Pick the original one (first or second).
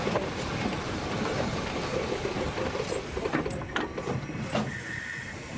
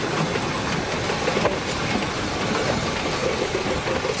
second